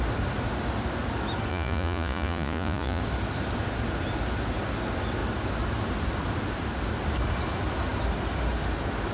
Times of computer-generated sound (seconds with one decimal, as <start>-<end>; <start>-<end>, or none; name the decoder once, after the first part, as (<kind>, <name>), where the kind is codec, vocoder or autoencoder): 1.5-3.0 (vocoder, Vocos)